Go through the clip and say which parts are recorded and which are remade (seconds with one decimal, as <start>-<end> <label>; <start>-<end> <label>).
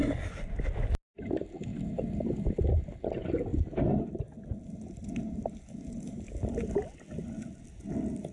0.0-8.3 recorded